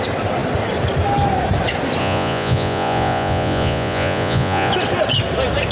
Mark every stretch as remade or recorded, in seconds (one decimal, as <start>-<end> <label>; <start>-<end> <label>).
0.0-2.0 recorded; 2.0-4.7 remade; 4.7-5.7 recorded